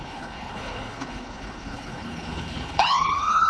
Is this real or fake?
fake